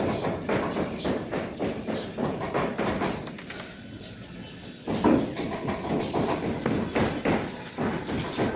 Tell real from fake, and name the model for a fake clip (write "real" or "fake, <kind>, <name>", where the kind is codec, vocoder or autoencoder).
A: real